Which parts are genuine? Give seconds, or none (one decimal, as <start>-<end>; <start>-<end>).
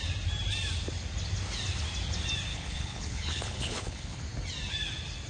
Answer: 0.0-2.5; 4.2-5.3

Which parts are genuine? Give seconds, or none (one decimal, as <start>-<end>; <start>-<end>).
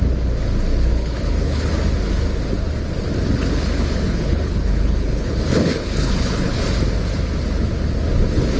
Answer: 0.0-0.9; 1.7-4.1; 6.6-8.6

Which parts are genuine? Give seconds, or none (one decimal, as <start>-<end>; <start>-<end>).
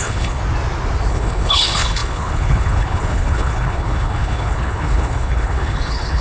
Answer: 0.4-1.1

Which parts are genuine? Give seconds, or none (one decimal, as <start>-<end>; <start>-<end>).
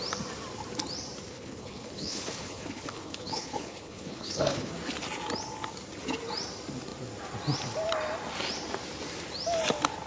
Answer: 0.0-1.3; 4.7-10.1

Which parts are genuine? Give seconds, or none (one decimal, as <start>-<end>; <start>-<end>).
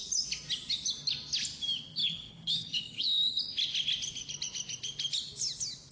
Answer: 0.0-2.0; 3.4-5.9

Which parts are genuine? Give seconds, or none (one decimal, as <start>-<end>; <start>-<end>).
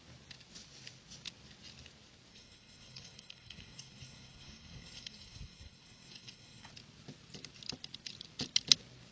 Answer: 0.0-2.3; 6.7-9.1